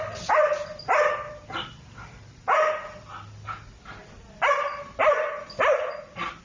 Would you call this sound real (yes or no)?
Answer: yes